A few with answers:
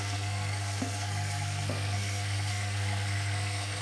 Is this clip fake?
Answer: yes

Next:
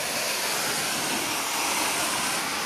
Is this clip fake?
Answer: no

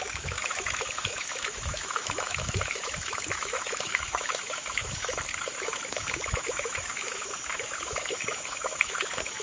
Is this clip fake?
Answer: yes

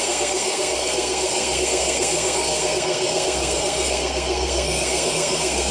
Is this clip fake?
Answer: yes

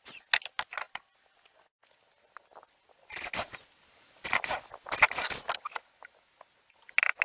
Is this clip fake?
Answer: no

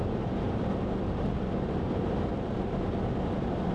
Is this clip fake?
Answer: no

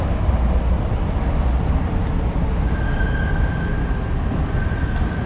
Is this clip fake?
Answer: no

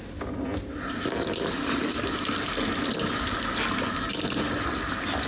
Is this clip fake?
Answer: no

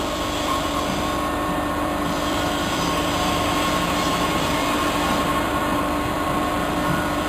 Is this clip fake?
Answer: yes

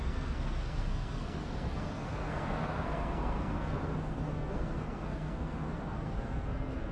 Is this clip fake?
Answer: yes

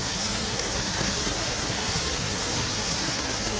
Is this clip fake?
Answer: yes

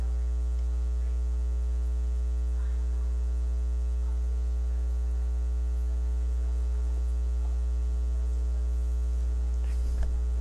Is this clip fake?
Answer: no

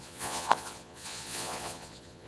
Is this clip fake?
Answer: yes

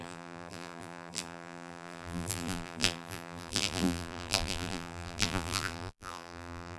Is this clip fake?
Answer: yes